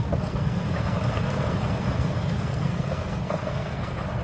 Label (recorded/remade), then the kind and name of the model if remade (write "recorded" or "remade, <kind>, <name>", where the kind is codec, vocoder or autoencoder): remade, codec, SNAC